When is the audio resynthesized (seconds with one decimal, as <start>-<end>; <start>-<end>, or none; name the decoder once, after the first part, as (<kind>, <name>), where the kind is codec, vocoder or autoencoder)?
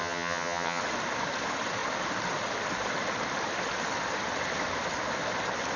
0.0-0.8 (vocoder, HiFi-GAN)